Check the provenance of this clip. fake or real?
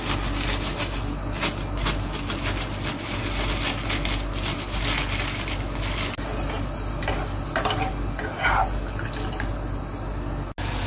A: real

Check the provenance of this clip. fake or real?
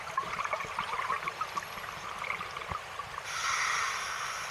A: real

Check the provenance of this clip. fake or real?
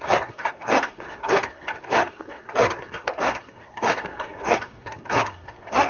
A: fake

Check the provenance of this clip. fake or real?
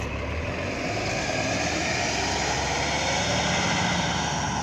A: real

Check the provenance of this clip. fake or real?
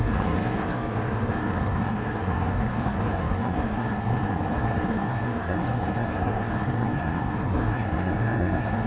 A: fake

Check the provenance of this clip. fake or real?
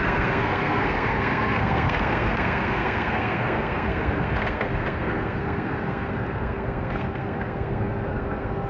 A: fake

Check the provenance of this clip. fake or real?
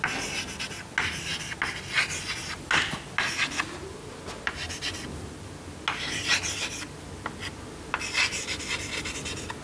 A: real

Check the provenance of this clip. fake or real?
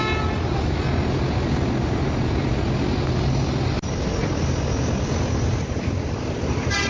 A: real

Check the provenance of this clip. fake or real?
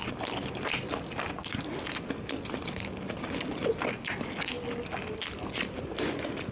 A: real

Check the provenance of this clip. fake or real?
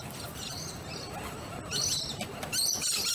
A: real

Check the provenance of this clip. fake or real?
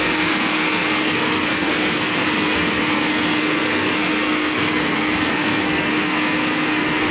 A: fake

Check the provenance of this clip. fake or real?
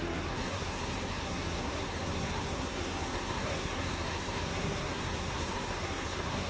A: fake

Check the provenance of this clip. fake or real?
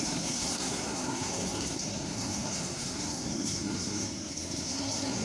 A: fake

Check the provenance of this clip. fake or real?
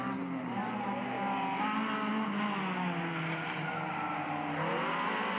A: real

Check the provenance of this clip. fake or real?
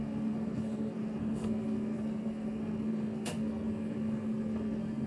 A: fake